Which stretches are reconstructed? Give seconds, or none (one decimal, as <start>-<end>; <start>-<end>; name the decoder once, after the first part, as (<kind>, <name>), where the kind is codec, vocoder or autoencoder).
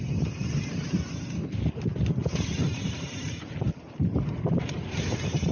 2.2-5.5 (vocoder, BigVGAN v2)